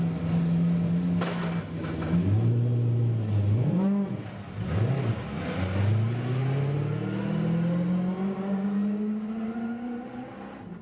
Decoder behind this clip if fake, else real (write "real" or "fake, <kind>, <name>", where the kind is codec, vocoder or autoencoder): real